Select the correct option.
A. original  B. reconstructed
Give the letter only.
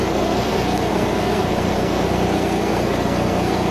B